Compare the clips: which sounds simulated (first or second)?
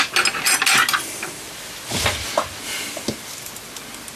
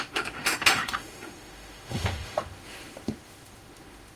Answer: second